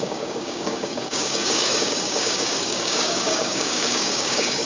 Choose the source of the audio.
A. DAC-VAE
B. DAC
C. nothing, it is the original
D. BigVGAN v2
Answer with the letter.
B